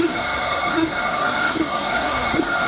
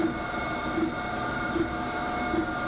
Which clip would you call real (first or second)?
second